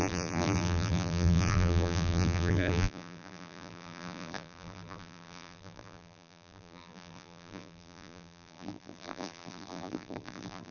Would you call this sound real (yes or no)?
no